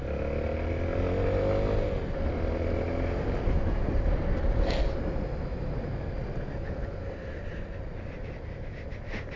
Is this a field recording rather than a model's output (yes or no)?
yes